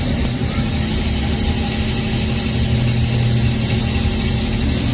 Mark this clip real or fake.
real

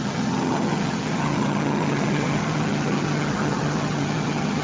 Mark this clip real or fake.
fake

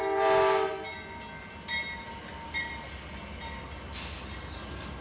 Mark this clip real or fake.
real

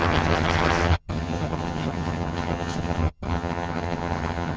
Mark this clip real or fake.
fake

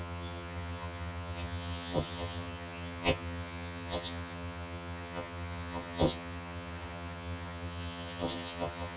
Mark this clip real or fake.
fake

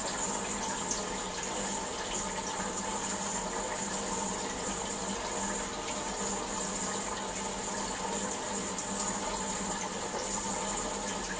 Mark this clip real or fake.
real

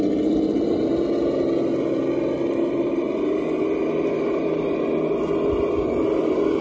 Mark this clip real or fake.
real